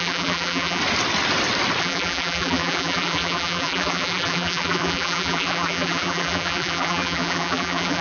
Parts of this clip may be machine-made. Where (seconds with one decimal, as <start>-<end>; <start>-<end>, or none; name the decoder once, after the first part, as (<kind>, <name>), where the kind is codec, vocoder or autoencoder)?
0.0-0.8 (vocoder, BigVGAN v2); 1.8-8.0